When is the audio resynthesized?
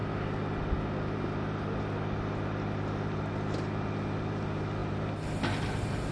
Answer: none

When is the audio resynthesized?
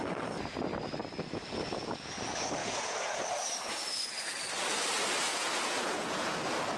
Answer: 2.6-3.2 (vocoder, Vocos); 5.3-6.3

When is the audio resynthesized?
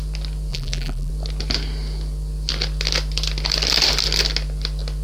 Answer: 0.5-1.1 (vocoder, BigVGAN v2)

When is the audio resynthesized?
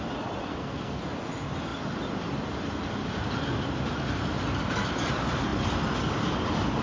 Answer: 0.5-1.0 (codec, SNAC)